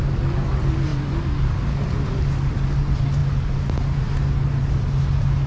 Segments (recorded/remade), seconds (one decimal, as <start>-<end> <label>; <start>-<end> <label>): 0.0-5.5 recorded